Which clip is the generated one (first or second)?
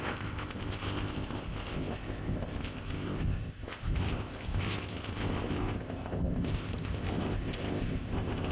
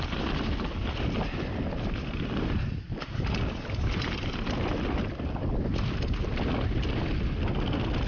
first